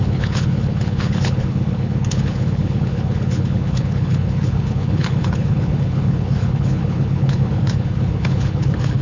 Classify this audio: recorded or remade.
remade